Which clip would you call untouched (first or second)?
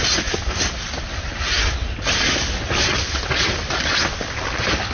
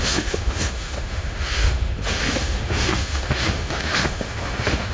first